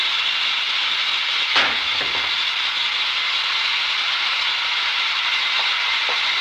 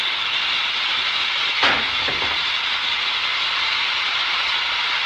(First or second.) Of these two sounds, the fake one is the second